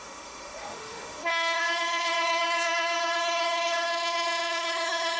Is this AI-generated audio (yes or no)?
yes